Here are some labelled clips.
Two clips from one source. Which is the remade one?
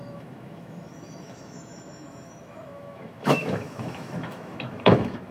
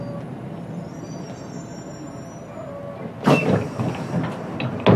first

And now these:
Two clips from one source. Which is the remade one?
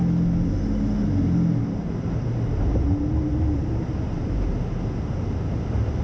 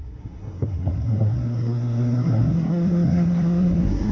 second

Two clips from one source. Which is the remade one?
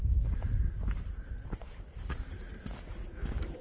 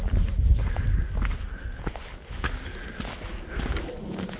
first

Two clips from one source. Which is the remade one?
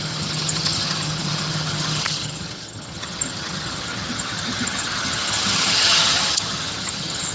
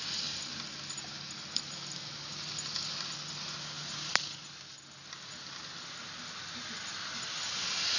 first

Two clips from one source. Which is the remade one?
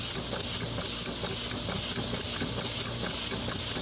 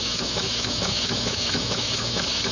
second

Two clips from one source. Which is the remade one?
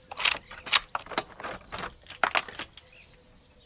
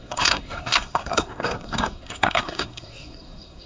second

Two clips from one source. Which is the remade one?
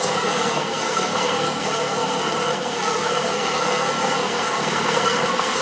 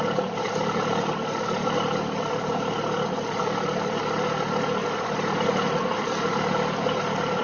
first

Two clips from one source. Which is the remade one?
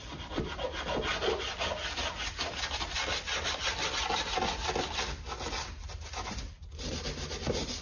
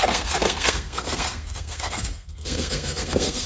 second